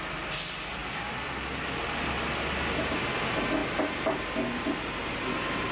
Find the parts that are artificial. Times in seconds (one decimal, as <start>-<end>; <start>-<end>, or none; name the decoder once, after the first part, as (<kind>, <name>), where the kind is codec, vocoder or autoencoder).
0.8-1.7 (vocoder, BigVGAN v2); 3.6-4.2